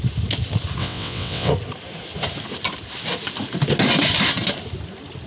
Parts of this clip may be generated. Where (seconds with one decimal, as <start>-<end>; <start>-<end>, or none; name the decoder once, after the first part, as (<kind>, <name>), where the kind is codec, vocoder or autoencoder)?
0.8-1.5 (vocoder, WaveNeXt)